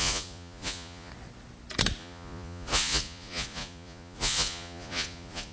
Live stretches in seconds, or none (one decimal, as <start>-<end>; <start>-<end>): 1.1-2.0